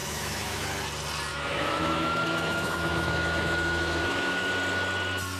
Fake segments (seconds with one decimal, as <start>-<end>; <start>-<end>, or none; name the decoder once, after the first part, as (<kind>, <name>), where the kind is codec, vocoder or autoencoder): 0.0-0.6 (autoencoder, DAC-VAE); 1.3-4.5